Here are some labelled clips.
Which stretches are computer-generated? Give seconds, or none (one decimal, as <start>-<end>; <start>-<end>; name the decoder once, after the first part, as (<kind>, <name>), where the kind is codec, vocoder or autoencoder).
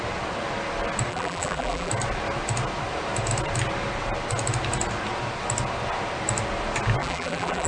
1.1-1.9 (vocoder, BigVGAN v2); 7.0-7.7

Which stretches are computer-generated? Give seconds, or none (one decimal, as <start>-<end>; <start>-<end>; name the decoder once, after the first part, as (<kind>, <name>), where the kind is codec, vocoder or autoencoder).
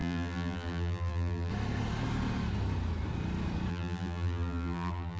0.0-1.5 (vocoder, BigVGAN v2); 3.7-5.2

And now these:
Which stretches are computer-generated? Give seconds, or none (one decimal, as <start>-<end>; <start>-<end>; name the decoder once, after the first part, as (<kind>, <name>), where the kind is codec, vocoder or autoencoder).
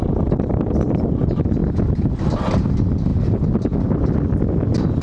none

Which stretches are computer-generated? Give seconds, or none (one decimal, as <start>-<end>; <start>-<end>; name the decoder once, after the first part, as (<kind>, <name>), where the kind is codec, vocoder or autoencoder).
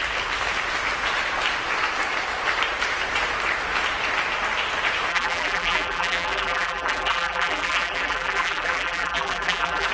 5.1-9.9 (vocoder, BigVGAN v2)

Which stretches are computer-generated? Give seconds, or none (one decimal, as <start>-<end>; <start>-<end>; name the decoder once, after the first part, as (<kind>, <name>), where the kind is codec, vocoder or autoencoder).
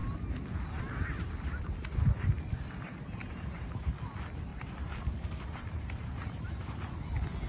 3.2-3.9 (vocoder, BigVGAN v2); 4.5-6.8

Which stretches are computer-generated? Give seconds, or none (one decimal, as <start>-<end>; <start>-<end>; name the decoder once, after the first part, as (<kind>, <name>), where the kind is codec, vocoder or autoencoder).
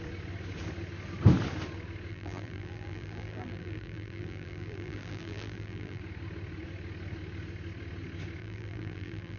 2.1-6.0 (vocoder, BigVGAN v2); 8.4-9.4